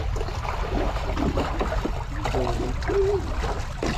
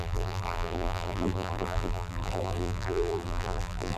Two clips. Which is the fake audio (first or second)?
second